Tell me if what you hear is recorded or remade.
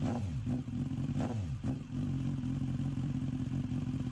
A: remade